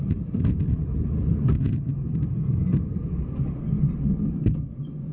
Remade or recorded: recorded